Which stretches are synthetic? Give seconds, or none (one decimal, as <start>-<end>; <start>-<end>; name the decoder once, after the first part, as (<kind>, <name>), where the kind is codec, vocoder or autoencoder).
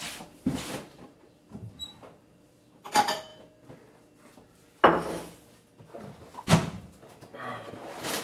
0.0-3.3 (vocoder, BigVGAN v2); 7.7-8.2